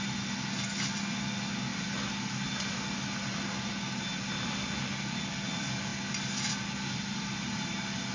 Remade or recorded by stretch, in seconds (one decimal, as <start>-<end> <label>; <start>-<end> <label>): 0.0-8.1 recorded